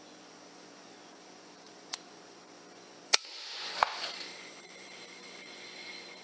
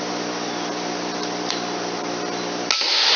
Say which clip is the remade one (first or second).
first